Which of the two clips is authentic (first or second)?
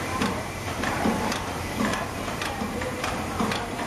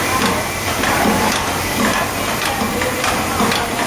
second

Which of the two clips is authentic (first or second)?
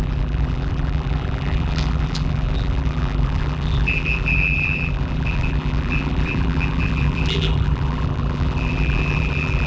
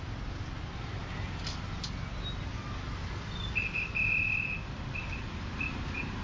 second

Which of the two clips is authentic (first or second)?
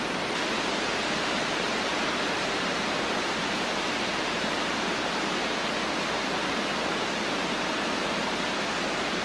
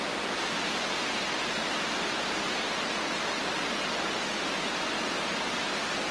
second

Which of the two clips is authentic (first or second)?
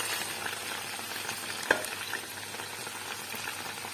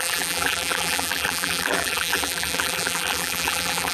first